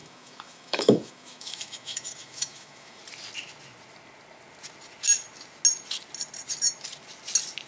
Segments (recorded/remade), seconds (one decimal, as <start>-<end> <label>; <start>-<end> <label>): 0.0-3.0 remade; 3.0-7.7 recorded

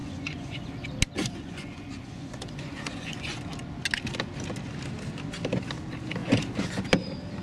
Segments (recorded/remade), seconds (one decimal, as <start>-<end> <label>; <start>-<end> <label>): 0.0-0.7 remade; 0.7-1.2 recorded; 1.2-3.4 remade; 3.4-6.2 recorded; 6.2-6.8 remade; 6.8-7.4 recorded